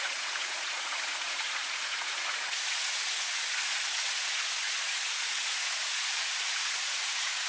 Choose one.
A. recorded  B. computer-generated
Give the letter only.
B